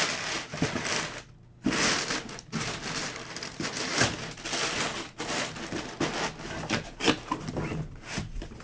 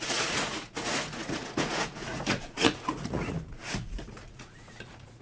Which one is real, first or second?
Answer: first